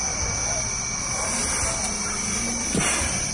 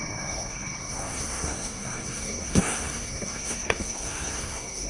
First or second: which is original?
first